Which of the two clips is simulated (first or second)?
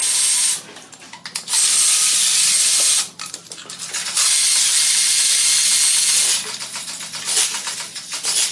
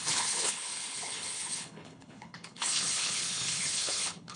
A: second